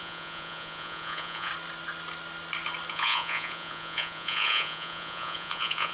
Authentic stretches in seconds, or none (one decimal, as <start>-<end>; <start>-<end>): 1.5-2.9

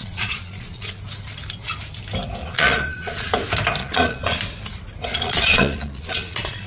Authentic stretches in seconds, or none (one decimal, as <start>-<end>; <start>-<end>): 1.0-2.4; 3.3-3.8; 4.4-5.1

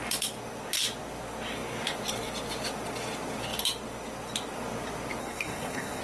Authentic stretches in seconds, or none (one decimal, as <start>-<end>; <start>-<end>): 0.0-5.2

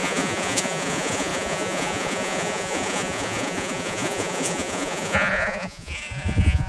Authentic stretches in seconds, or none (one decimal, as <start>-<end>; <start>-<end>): none

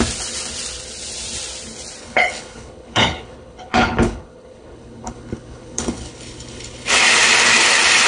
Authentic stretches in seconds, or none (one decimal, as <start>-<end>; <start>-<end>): 0.0-2.0; 6.9-8.1

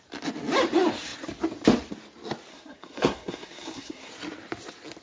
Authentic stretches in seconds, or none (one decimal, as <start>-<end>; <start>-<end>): 0.0-2.5; 4.1-5.0